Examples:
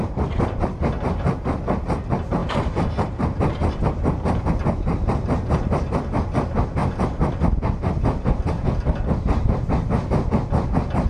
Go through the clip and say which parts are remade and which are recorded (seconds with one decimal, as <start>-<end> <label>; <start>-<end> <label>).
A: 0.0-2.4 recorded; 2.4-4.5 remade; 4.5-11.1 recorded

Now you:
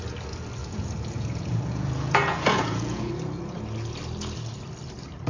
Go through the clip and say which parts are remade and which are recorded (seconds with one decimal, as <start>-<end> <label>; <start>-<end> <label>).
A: 0.0-0.6 recorded; 0.6-3.1 remade; 3.1-5.3 recorded

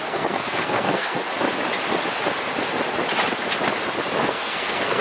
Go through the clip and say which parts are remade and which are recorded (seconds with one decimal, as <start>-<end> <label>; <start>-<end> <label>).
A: 0.0-1.2 remade; 1.2-4.2 recorded; 4.2-5.0 remade

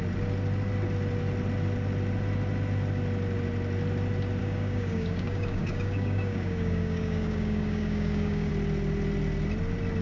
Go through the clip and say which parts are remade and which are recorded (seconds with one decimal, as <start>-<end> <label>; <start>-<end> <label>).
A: 0.0-4.4 recorded; 4.4-8.5 remade; 8.5-10.0 recorded

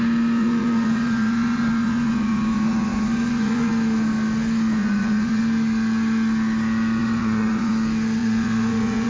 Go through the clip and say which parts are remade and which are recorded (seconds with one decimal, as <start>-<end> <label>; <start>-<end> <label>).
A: 0.0-0.4 recorded; 0.4-3.7 remade; 3.7-4.8 recorded; 4.8-5.4 remade; 5.4-7.0 recorded; 7.0-7.7 remade; 7.7-8.2 recorded; 8.2-9.1 remade

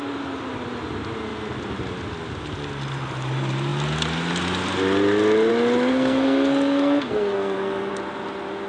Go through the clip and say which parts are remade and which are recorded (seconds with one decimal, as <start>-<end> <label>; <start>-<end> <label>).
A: 0.0-5.9 recorded; 5.9-7.9 remade; 7.9-8.7 recorded

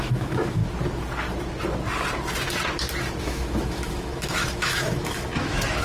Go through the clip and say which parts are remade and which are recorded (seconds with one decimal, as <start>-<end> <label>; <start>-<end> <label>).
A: 0.0-0.6 remade; 0.6-3.2 recorded; 3.2-5.8 remade